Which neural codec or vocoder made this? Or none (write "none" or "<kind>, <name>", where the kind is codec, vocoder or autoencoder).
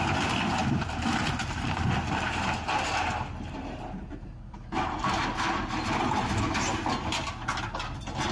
none